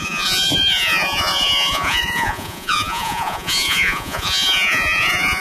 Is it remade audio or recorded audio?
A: remade